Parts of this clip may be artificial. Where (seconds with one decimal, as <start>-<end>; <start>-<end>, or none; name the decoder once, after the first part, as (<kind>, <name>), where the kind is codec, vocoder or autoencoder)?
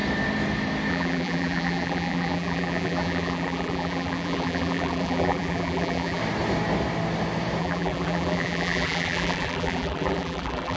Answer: 0.9-6.2 (vocoder, BigVGAN v2); 7.6-10.8